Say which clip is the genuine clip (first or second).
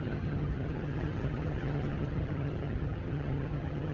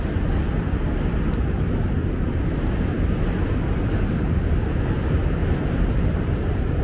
second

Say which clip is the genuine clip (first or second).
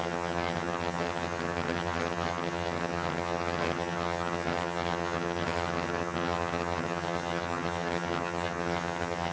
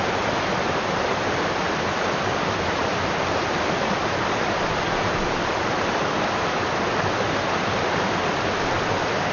second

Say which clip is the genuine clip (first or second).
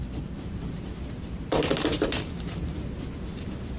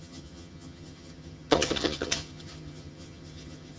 first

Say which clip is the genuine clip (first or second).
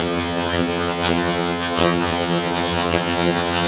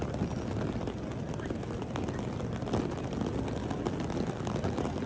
second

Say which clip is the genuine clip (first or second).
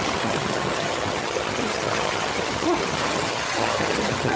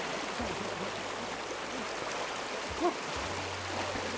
second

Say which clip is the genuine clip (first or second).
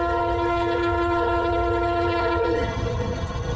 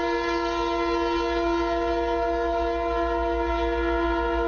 second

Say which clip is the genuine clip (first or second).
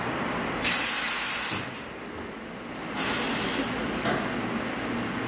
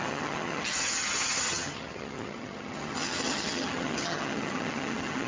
first